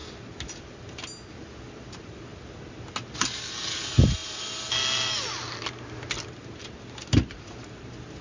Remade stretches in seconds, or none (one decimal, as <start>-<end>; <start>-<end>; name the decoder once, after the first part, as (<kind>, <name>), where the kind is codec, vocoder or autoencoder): none

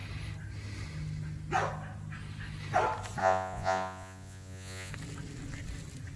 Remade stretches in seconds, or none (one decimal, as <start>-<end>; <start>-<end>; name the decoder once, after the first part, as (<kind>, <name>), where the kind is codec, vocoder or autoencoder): 3.2-4.9 (vocoder, Vocos)

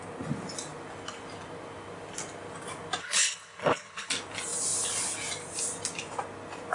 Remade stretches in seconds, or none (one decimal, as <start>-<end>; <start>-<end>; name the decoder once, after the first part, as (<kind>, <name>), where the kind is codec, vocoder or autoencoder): 3.0-4.1 (codec, HILCodec)

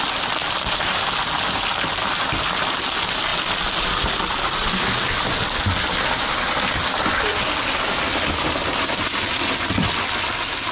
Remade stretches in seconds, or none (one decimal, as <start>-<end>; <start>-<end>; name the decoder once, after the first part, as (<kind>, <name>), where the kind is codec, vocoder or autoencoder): 0.4-1.1 (vocoder, BigVGAN v2)

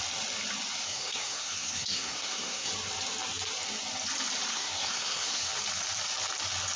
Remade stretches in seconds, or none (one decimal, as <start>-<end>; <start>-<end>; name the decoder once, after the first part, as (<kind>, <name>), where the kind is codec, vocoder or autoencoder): 0.8-2.7 (codec, SNAC); 4.5-5.5

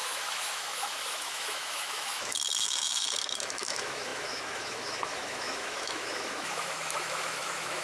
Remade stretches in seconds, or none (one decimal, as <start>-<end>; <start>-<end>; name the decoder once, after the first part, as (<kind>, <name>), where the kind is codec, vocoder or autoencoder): 0.0-7.8 (autoencoder, DAC-VAE)